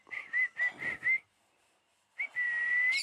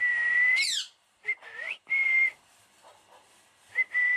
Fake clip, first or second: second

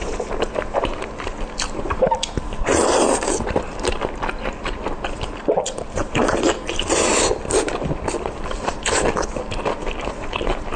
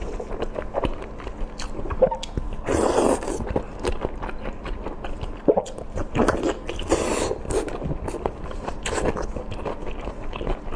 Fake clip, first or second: first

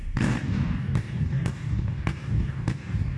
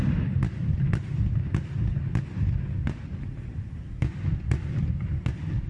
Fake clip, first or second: first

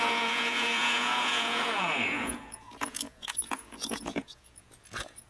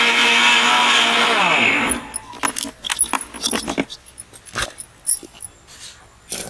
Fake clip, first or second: first